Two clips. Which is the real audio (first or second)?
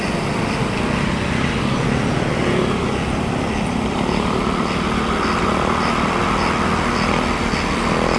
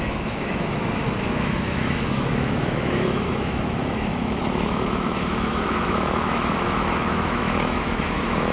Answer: first